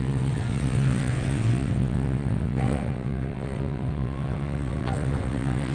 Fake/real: fake